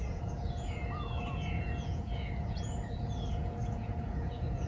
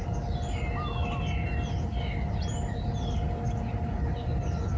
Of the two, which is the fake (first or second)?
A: first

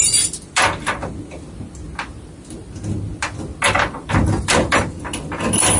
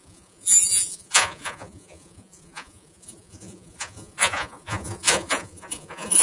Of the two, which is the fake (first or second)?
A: second